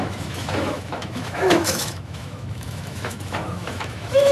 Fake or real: fake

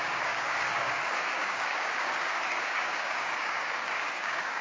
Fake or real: fake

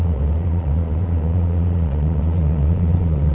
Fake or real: fake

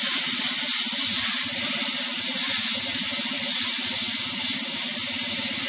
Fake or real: real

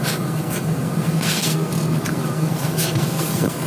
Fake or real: fake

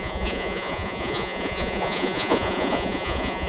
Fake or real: fake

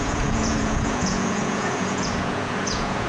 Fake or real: fake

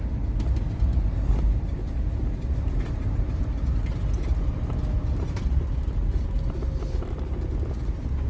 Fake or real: real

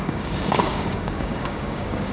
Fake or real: fake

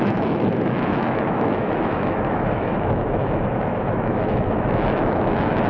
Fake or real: fake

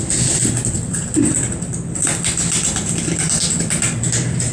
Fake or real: real